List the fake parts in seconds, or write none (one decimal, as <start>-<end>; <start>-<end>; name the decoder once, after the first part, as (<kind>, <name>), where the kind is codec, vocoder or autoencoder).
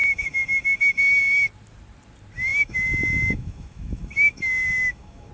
0.0-1.2 (autoencoder, DAC-VAE); 2.5-5.3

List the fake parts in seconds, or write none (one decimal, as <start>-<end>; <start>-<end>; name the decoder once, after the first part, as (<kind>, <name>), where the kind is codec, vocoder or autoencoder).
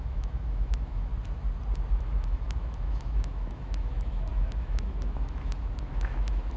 0.0-1.1 (autoencoder, DAC-VAE); 1.9-6.6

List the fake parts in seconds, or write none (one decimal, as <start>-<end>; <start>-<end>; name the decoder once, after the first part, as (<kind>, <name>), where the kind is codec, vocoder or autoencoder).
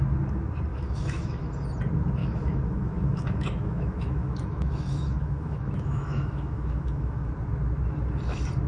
0.7-1.4 (autoencoder, DAC-VAE); 2.2-7.3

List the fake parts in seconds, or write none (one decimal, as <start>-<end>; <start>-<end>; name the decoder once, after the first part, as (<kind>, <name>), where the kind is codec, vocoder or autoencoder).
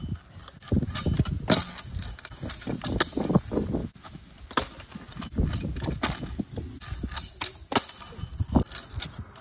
3.8-4.3 (autoencoder, DAC-VAE)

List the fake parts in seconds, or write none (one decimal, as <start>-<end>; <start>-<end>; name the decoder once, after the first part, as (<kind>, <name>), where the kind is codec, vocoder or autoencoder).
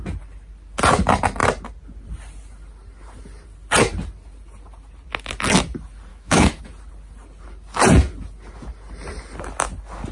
6.1-6.6 (autoencoder, DAC-VAE)